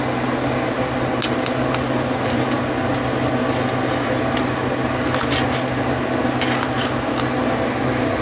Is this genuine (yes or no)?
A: yes